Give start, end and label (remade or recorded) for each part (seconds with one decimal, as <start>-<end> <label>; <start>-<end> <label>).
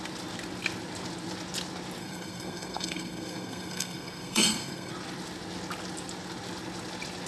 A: 0.0-2.0 recorded; 2.0-4.9 remade; 4.9-7.3 recorded